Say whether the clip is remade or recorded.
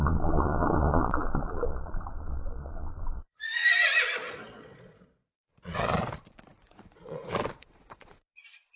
remade